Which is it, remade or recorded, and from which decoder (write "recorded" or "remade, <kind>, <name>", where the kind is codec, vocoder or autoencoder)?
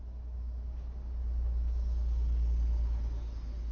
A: recorded